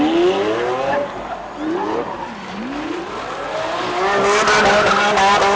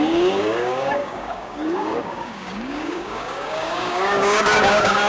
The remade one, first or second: second